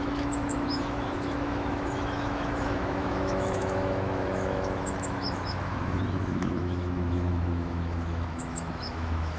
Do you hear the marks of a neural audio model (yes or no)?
yes